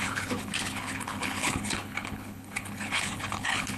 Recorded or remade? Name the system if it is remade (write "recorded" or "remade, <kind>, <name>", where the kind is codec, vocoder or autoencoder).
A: remade, codec, HILCodec